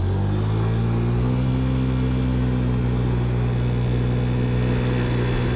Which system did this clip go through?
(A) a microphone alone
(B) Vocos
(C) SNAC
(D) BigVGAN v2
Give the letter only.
A